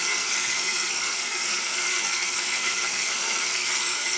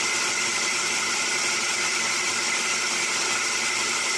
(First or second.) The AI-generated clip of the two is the first